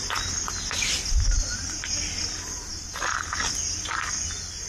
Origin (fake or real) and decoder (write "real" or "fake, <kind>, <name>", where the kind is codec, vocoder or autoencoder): real